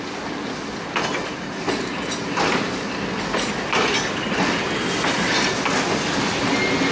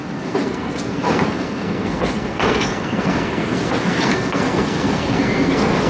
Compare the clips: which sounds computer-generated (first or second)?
second